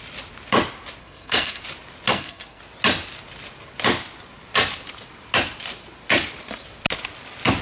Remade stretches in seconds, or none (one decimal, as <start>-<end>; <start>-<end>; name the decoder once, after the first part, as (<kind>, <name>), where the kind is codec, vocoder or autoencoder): 1.0-1.6 (codec, SNAC); 2.1-2.6